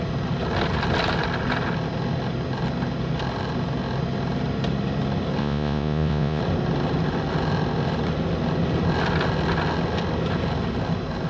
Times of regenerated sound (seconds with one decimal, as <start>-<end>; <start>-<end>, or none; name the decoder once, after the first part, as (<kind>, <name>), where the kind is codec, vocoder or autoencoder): 5.4-6.4 (vocoder, Vocos)